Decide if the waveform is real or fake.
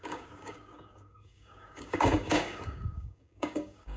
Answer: fake